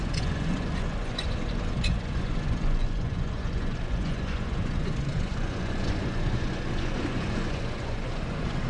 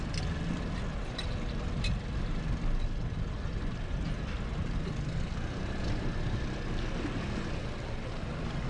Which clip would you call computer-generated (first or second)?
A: first